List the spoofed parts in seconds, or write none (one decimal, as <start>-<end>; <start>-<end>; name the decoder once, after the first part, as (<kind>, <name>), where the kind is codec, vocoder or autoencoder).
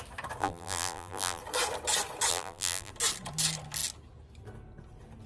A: 0.4-1.4 (vocoder, BigVGAN v2); 2.3-2.9